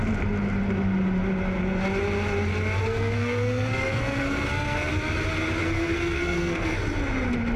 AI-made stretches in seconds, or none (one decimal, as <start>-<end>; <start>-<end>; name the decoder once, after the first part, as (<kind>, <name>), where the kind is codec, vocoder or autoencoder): 2.8-4.9 (codec, SNAC); 5.6-6.8